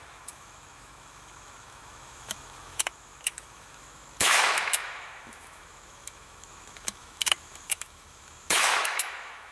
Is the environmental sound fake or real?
fake